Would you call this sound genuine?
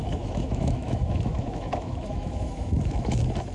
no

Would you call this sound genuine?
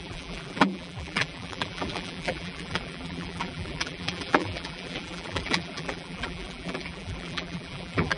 no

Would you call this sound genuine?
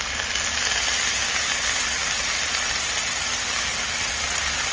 yes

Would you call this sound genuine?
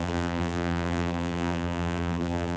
no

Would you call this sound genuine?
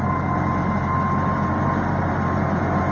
yes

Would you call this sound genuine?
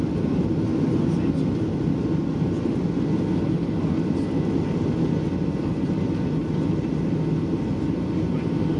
yes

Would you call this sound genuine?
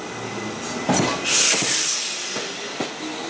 yes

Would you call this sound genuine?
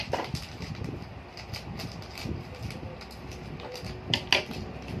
yes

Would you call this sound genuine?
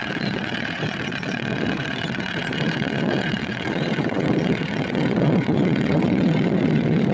no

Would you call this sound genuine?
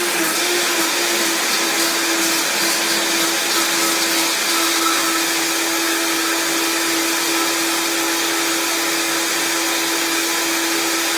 yes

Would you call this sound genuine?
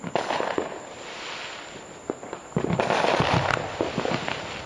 yes